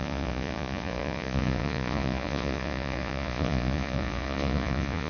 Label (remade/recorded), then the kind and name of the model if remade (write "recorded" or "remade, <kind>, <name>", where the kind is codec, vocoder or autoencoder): remade, vocoder, Vocos